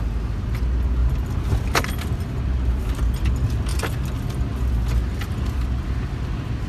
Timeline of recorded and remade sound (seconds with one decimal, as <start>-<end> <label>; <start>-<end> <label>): 0.0-1.0 recorded; 1.0-2.8 remade; 2.8-6.7 recorded